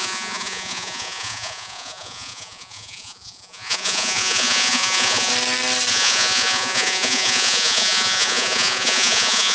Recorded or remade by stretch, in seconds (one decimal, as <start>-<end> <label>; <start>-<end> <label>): 0.0-5.3 remade; 5.3-5.9 recorded; 5.9-9.5 remade